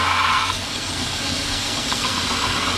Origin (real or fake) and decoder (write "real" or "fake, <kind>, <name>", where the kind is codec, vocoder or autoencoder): fake, codec, SNAC